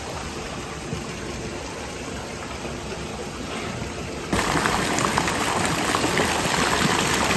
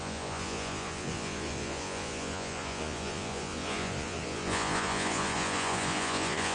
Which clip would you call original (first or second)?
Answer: first